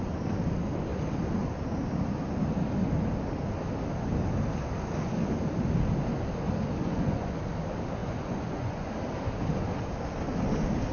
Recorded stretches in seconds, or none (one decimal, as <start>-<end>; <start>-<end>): 0.0-6.8; 7.3-8.0; 8.9-10.9